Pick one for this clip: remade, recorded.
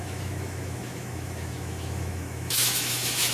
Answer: remade